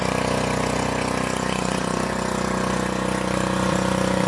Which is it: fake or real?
fake